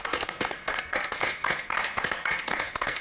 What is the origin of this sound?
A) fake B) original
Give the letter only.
A